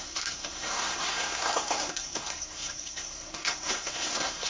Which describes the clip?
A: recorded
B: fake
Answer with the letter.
B